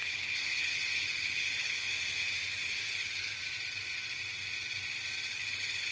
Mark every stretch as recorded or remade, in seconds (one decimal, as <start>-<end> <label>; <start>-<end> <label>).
0.0-1.9 remade; 1.9-2.9 recorded; 2.9-3.4 remade; 3.4-5.3 recorded; 5.3-5.9 remade